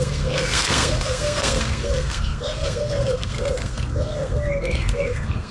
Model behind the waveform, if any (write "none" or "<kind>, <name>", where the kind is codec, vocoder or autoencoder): codec, SNAC